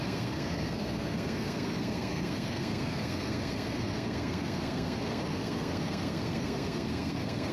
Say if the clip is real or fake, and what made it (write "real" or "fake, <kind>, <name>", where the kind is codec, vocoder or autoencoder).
fake, codec, SNAC